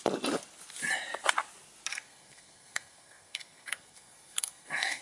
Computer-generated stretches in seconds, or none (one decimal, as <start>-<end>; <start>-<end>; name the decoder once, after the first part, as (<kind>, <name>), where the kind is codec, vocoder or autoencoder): 1.9-5.0 (codec, SNAC)